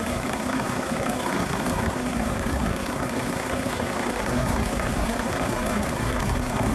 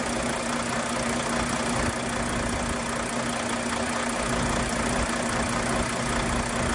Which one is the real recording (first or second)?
second